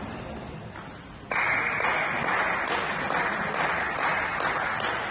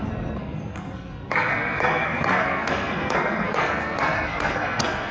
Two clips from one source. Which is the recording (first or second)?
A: first